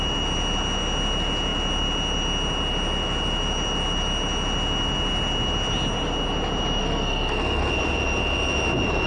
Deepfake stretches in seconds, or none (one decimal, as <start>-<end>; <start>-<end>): 6.8-7.7